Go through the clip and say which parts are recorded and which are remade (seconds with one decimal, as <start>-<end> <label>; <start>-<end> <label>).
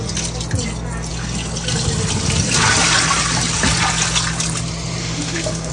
0.0-5.0 recorded; 5.0-5.7 remade